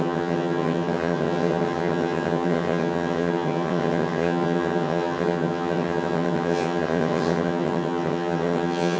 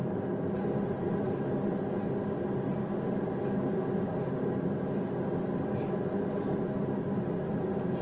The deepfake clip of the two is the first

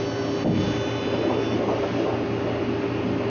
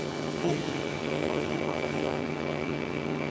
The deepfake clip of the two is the second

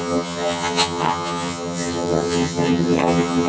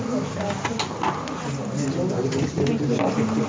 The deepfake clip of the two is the first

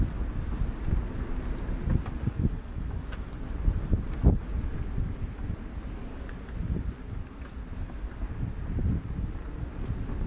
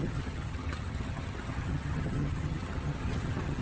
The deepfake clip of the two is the second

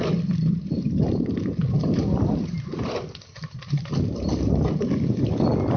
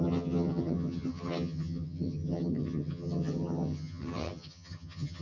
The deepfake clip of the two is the second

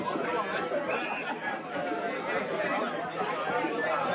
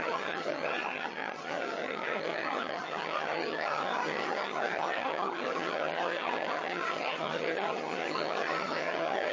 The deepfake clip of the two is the second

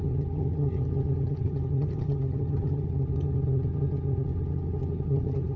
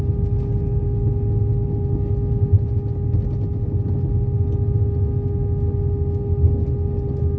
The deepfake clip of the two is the first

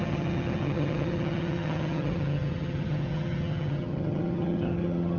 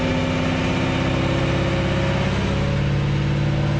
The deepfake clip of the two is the first